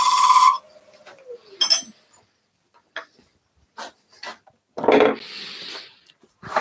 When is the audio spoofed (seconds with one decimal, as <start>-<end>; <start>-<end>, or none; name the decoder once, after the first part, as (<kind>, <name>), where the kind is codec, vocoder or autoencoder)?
none